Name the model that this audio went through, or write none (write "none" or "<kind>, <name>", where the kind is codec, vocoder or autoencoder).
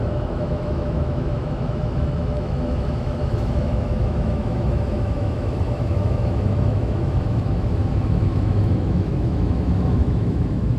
autoencoder, DAC-VAE